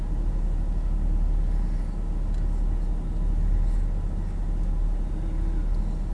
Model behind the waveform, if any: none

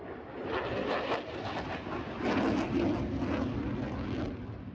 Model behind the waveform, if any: none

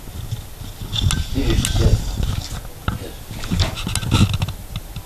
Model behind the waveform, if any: none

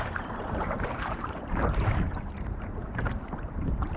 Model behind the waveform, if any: vocoder, BigVGAN v2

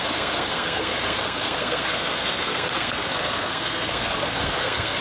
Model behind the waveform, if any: codec, SNAC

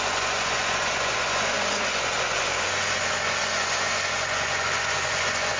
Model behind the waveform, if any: vocoder, Vocos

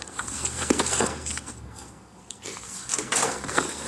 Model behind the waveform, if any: codec, SNAC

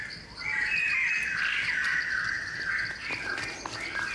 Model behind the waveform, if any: none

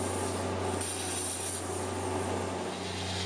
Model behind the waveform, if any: none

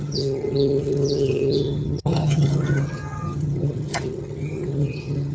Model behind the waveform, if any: vocoder, HiFi-GAN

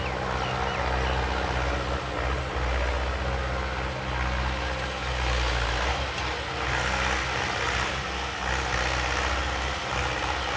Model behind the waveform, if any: none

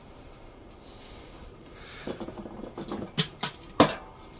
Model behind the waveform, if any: vocoder, BigVGAN v2